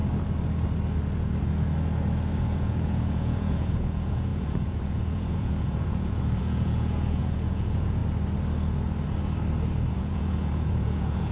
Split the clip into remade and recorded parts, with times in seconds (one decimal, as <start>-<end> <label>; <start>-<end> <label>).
0.0-2.4 recorded; 2.4-8.0 remade; 8.0-9.9 recorded; 9.9-11.3 remade